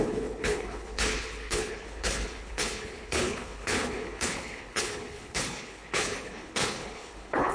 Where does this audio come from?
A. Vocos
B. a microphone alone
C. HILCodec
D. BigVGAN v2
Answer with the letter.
C